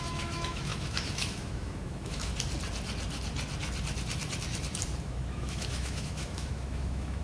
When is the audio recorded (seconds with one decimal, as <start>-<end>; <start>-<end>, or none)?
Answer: 2.3-5.0